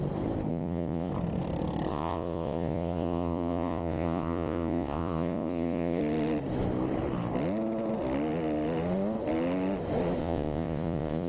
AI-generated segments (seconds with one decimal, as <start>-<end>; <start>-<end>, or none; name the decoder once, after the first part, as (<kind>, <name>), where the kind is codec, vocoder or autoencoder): 0.5-1.1 (vocoder, Vocos); 1.9-6.0; 10.2-11.3